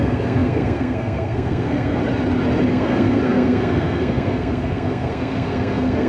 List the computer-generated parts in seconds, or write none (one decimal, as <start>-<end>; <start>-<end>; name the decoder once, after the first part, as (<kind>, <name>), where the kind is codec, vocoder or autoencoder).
0.0-2.0 (codec, SNAC); 2.7-6.1